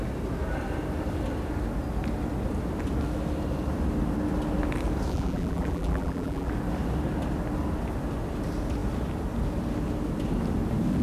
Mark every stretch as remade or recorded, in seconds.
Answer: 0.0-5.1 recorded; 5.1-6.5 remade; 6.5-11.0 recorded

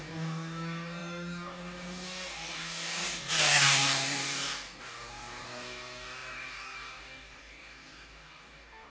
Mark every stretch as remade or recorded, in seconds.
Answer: 0.0-8.9 remade

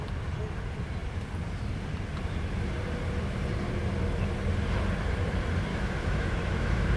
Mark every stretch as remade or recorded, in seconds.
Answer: 0.0-5.7 recorded; 5.7-7.0 remade

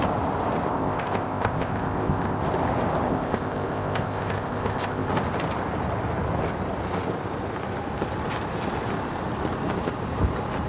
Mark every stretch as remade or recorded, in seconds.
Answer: 0.0-0.7 recorded; 0.7-2.4 remade; 2.4-3.1 recorded; 3.1-5.1 remade; 5.1-10.7 recorded

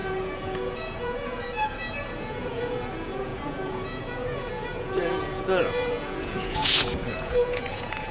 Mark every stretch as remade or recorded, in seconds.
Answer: 0.0-8.1 remade

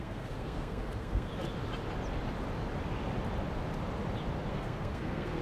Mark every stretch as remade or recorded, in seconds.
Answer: 0.0-1.3 remade; 1.3-4.5 recorded; 4.5-5.4 remade

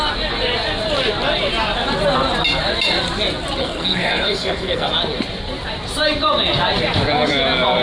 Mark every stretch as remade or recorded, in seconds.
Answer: 0.0-3.6 recorded; 3.6-4.9 remade; 4.9-7.8 recorded